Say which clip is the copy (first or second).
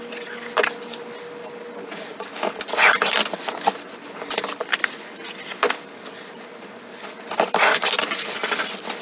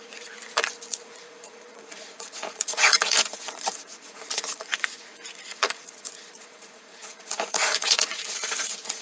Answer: second